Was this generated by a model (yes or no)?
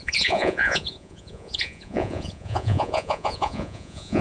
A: yes